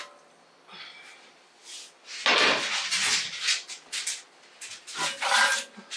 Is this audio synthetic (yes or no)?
no